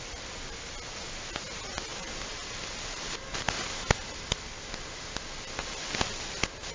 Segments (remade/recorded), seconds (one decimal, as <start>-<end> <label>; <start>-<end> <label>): 0.0-1.9 recorded; 1.9-4.3 remade; 4.3-6.7 recorded